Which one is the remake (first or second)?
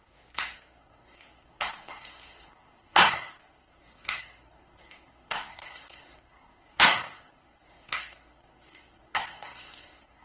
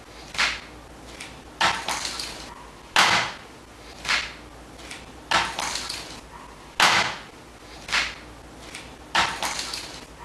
first